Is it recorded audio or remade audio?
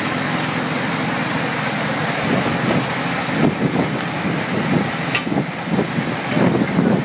recorded